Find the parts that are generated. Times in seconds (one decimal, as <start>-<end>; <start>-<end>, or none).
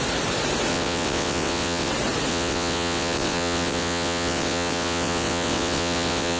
0.7-1.9; 2.3-6.4